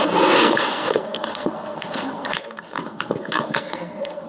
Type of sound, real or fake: fake